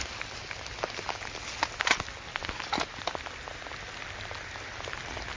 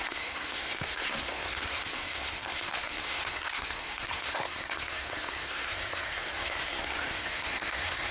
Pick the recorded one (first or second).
first